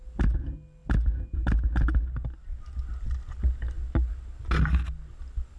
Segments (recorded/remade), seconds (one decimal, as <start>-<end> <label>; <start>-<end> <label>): 0.0-5.6 recorded